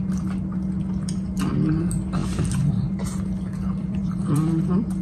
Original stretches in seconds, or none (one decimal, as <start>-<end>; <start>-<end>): 0.0-2.2; 3.0-3.8